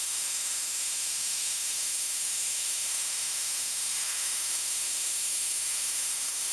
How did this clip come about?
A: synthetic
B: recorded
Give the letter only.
A